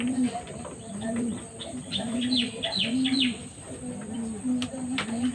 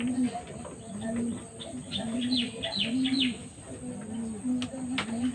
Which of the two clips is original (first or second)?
second